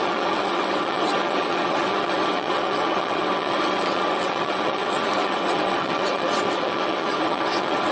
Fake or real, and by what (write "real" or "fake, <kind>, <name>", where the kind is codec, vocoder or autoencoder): fake, vocoder, WaveNeXt